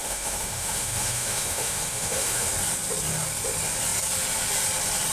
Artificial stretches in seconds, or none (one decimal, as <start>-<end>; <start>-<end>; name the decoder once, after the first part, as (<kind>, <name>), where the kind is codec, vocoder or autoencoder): 0.0-2.5 (autoencoder, DAC-VAE)